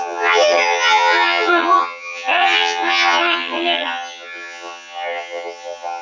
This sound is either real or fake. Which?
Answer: fake